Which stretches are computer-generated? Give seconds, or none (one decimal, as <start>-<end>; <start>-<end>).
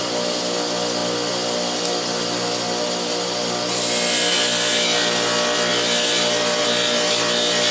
none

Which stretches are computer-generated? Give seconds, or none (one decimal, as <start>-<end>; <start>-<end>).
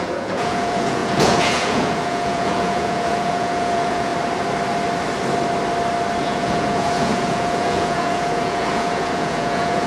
0.0-4.1; 6.2-9.9